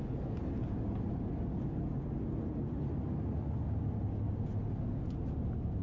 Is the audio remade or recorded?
recorded